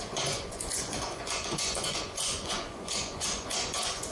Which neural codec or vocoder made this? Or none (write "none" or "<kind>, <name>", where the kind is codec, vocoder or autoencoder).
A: vocoder, Vocos